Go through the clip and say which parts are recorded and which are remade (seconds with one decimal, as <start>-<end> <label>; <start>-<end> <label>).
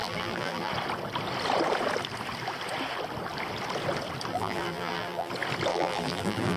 0.0-0.7 remade; 0.7-4.3 recorded; 4.3-5.3 remade; 5.3-5.7 recorded; 5.7-6.6 remade